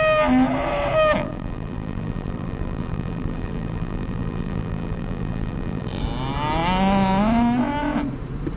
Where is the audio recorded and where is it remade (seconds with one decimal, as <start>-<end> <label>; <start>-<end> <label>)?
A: 0.0-1.2 recorded; 1.2-6.0 remade; 6.0-8.6 recorded